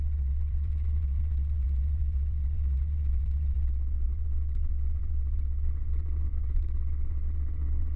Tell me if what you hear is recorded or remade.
remade